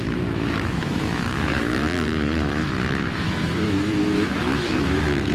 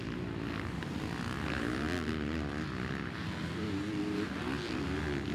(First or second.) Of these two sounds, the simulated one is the first